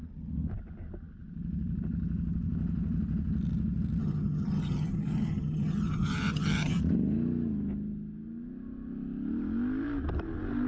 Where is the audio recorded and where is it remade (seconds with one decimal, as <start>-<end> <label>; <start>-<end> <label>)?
0.0-4.0 recorded; 4.0-6.8 remade; 6.8-10.7 recorded

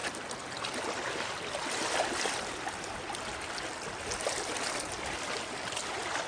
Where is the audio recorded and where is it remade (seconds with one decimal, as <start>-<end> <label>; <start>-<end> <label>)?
0.0-6.3 recorded

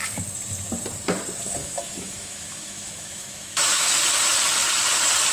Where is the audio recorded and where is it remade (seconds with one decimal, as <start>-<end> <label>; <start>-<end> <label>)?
0.0-1.6 recorded; 1.6-4.0 remade; 4.0-5.3 recorded

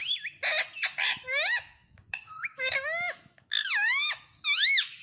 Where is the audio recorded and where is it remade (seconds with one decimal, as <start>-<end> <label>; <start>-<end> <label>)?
0.0-1.0 recorded; 1.0-5.0 remade

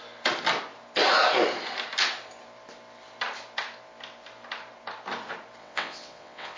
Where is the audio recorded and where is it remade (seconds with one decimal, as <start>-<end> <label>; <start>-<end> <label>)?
0.0-5.6 recorded; 5.6-6.6 remade

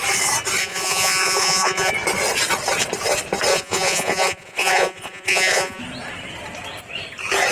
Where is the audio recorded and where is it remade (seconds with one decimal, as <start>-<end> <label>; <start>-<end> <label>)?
0.0-0.6 recorded; 0.6-1.9 remade; 1.9-3.5 recorded; 3.5-5.8 remade; 5.8-7.5 recorded